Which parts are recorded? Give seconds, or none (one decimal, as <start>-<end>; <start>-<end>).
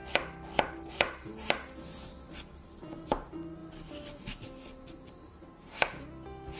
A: 0.0-6.6